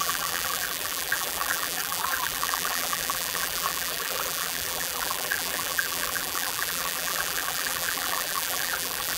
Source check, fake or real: fake